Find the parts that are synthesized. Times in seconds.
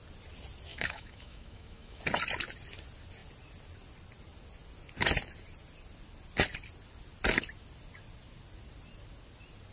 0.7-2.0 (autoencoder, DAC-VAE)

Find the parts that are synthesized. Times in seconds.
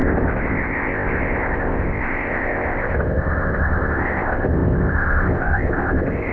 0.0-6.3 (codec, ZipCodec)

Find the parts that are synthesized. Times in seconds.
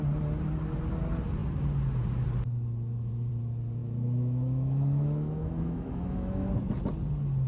3.8-6.5 (autoencoder, DAC-VAE)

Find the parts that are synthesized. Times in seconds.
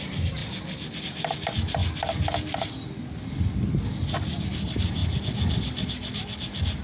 0.0-0.4 (vocoder, BigVGAN v2); 1.0-1.8; 4.4-5.0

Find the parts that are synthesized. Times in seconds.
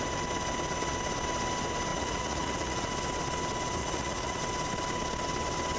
1.9-2.9 (vocoder, Vocos); 3.8-4.4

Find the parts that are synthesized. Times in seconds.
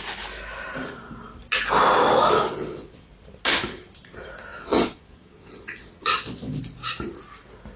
2.5-3.1 (vocoder, Vocos); 4.5-6.6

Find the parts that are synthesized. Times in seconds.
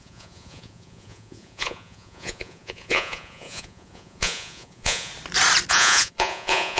0.0-5.1 (vocoder, Vocos); 5.7-6.8